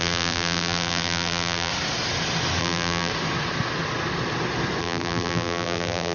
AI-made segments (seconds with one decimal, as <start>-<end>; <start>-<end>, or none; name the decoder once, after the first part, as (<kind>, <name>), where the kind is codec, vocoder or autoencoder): 0.0-1.7 (vocoder, BigVGAN v2); 2.6-3.1; 4.8-6.1